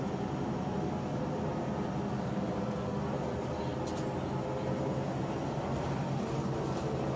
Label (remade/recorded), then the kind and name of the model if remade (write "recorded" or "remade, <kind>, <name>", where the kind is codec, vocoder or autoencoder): recorded